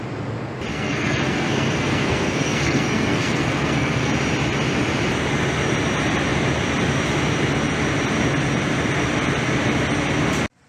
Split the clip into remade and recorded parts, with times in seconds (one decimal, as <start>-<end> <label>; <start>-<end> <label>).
0.0-0.7 recorded; 0.7-4.1 remade; 4.1-10.7 recorded